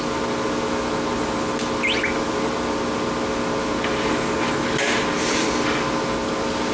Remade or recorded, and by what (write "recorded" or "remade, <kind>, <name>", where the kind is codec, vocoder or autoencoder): recorded